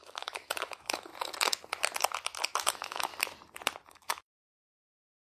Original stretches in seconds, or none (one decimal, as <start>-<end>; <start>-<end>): 1.1-2.6; 3.1-3.9